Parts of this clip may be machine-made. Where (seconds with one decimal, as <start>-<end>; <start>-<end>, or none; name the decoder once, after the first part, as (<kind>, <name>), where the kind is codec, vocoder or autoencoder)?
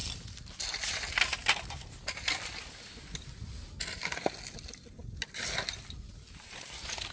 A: none